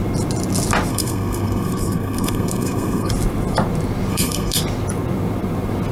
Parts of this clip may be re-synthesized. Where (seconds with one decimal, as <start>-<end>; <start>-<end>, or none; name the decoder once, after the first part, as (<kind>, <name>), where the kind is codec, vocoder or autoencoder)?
0.9-3.1 (codec, SNAC); 4.1-4.6